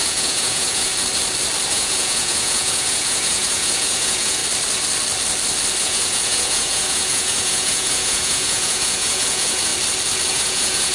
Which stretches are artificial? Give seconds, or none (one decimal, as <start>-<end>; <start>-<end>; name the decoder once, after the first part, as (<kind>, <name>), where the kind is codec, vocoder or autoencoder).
0.0-0.9 (vocoder, Vocos); 1.7-4.4; 5.8-9.7; 10.3-10.9